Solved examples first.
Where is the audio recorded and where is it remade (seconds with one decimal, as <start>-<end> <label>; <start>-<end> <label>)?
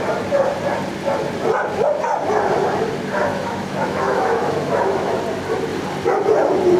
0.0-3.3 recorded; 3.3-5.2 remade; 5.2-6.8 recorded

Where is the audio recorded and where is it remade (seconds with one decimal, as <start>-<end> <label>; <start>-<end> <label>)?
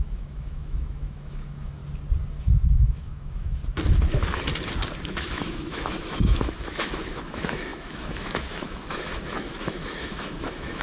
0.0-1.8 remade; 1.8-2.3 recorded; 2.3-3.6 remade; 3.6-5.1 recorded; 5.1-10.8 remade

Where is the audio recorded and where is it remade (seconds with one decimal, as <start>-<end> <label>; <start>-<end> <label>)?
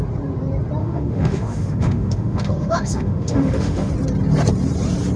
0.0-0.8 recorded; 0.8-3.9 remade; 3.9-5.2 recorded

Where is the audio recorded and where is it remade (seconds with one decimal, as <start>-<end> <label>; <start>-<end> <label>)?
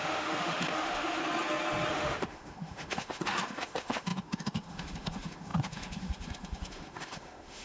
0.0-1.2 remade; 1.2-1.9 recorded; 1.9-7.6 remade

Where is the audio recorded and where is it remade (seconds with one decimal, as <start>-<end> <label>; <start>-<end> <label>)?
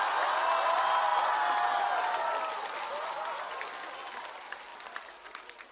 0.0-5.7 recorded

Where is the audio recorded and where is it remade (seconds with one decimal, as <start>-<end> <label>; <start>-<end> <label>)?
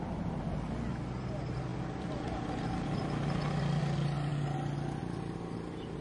0.0-6.0 recorded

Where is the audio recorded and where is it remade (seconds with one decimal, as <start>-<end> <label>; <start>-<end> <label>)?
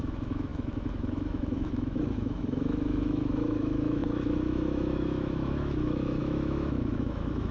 0.0-7.5 remade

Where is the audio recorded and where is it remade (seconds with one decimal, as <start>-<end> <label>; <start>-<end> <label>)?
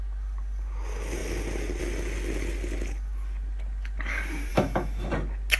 0.0-4.5 recorded; 4.5-5.1 remade; 5.1-5.6 recorded